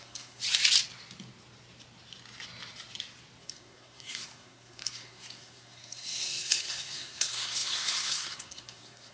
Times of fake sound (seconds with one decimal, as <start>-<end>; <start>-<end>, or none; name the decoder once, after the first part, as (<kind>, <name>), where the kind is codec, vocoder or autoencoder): 0.0-0.4 (codec, SNAC); 3.4-9.1

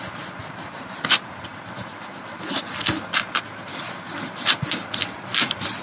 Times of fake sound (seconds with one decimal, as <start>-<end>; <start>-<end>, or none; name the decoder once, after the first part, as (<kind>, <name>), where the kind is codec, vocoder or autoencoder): none

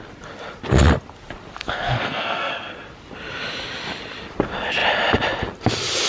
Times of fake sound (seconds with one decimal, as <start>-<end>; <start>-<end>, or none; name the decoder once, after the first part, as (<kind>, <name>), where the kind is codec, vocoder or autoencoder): 1.5-2.7 (codec, SNAC)